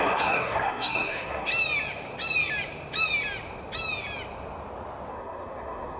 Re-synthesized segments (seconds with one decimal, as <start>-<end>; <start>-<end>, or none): 0.0-1.5; 5.1-6.0